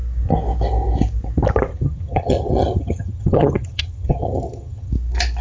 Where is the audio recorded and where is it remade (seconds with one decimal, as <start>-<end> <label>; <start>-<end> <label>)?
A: 0.0-1.7 recorded; 1.7-4.9 remade; 4.9-5.4 recorded